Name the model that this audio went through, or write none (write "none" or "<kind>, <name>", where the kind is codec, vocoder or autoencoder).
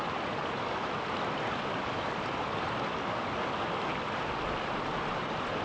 none